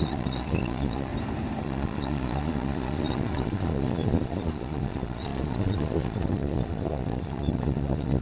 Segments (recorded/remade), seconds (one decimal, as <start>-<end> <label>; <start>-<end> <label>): 0.0-1.1 remade; 1.1-1.6 recorded; 1.6-8.2 remade